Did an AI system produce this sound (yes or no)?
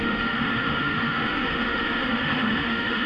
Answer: yes